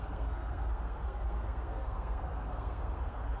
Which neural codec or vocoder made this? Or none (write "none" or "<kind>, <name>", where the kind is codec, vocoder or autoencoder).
codec, SNAC